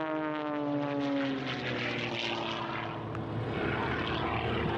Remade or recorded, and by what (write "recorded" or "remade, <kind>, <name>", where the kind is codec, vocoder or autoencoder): recorded